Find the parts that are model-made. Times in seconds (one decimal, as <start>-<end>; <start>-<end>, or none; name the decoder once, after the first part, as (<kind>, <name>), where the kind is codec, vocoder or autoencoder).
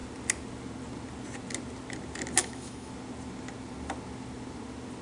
2.4-2.9 (autoencoder, DAC-VAE)